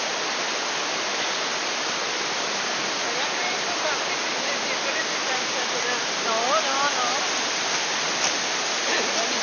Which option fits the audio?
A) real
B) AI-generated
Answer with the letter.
A